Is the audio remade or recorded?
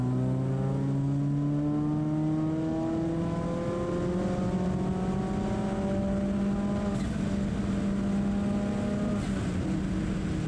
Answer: recorded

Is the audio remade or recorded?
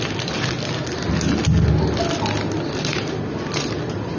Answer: recorded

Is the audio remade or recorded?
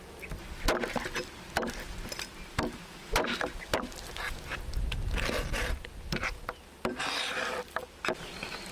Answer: recorded